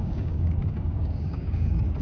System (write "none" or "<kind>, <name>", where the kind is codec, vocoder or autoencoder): codec, DAC